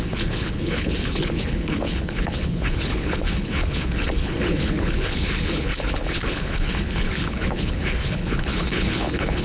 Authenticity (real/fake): fake